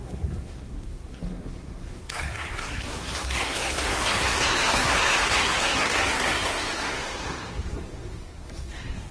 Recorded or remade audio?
remade